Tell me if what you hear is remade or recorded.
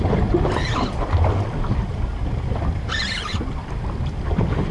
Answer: recorded